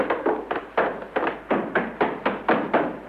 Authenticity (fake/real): real